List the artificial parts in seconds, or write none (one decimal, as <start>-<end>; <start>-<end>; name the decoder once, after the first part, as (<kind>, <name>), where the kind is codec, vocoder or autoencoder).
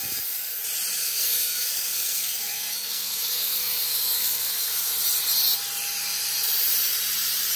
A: 0.0-0.6 (codec, SNAC); 1.0-4.9